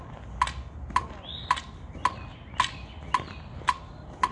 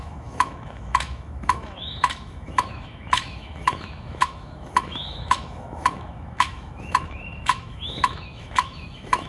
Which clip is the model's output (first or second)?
second